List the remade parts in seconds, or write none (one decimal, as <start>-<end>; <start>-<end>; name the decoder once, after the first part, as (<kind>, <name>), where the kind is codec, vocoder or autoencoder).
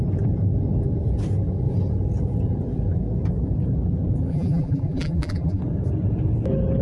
4.3-5.6 (vocoder, BigVGAN v2)